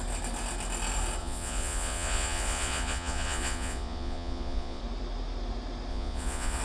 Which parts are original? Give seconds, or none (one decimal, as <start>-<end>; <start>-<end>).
0.0-1.2; 4.8-5.9